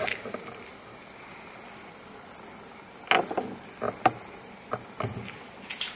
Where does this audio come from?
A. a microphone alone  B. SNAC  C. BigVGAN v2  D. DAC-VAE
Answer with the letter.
A